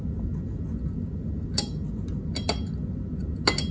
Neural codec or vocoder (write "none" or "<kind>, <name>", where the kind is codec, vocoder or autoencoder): none